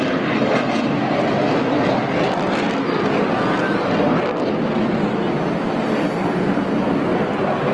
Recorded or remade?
recorded